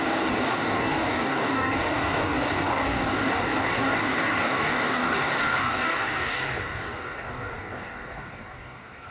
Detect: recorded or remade remade